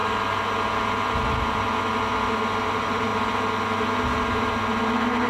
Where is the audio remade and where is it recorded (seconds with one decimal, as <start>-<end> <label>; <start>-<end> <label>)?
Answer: 0.0-2.7 recorded; 2.7-3.1 remade; 3.1-5.3 recorded